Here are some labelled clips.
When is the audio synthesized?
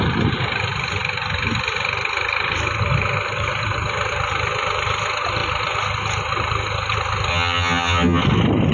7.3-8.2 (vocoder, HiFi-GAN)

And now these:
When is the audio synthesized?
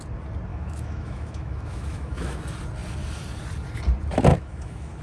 0.5-2.4 (autoencoder, DAC-VAE); 4.3-5.0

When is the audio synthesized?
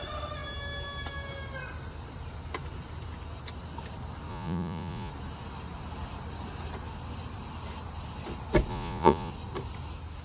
4.3-5.1 (vocoder, Vocos); 8.7-9.3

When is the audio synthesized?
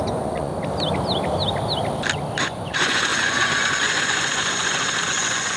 0.0-0.5 (vocoder, Vocos); 2.4-5.6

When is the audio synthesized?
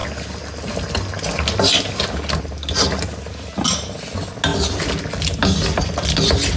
none